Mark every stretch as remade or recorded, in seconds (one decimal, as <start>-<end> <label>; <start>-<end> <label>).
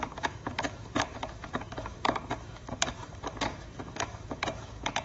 0.0-5.0 remade